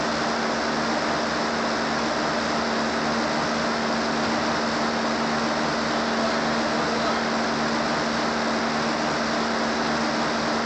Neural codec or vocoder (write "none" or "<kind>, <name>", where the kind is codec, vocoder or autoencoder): none